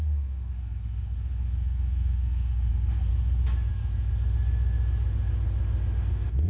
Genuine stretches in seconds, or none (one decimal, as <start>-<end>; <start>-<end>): 3.1-6.0